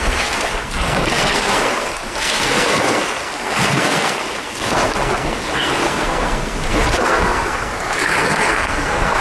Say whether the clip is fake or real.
fake